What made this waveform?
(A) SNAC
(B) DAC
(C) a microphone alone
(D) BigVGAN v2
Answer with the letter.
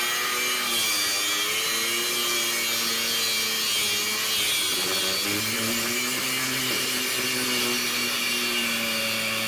C